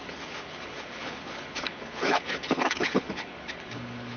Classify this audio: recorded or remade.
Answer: remade